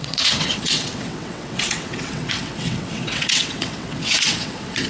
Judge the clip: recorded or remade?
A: remade